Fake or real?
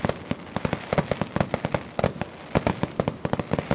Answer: real